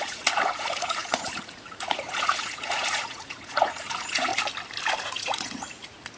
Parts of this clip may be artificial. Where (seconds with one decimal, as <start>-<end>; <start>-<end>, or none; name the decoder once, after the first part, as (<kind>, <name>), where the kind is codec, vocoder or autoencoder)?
0.0-4.3 (vocoder, Vocos); 5.0-6.2